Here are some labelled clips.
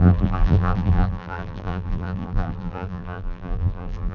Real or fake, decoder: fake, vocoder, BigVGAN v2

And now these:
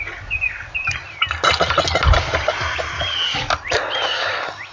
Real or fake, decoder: real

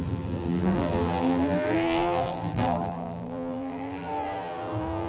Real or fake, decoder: fake, vocoder, BigVGAN v2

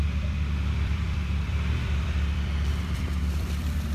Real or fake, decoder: fake, vocoder, BigVGAN v2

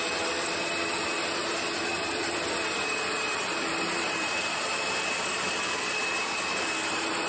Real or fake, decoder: fake, vocoder, BigVGAN v2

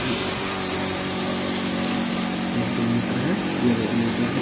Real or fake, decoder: fake, vocoder, BigVGAN v2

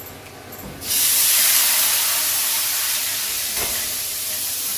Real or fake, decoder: real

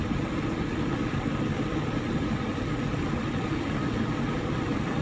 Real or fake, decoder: real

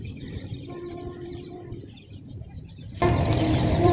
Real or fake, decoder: fake, vocoder, BigVGAN v2